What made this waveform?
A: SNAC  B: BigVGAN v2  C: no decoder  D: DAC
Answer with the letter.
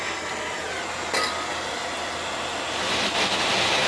C